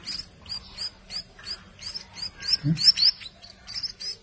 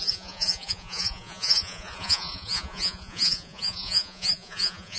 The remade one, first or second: second